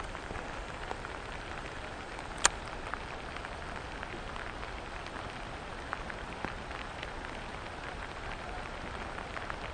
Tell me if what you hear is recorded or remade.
remade